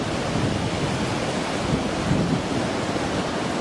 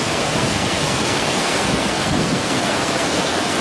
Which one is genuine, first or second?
first